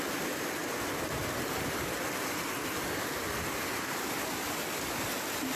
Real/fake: real